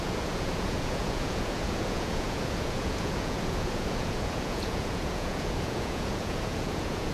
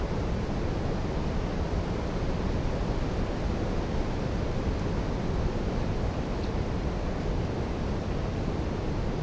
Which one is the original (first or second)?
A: second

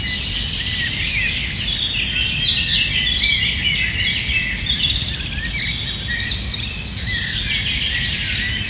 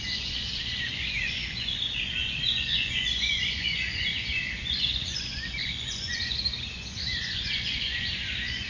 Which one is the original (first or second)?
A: first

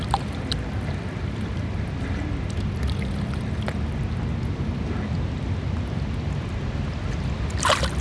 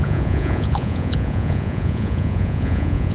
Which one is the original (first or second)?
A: first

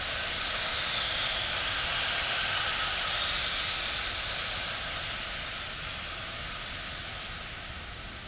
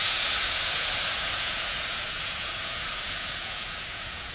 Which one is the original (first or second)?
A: first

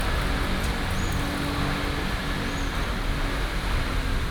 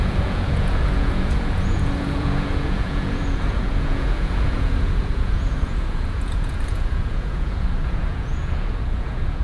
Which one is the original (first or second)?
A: first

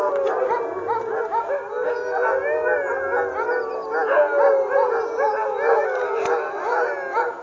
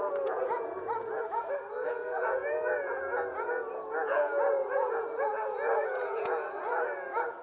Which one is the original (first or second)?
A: first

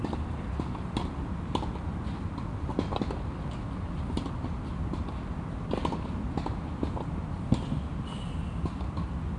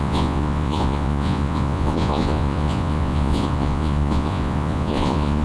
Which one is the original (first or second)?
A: first